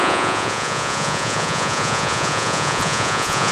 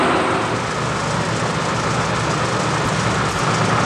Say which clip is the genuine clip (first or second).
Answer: second